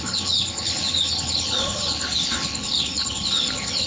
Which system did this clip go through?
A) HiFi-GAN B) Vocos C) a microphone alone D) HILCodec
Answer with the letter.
D